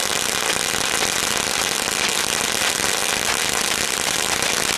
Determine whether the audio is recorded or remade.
recorded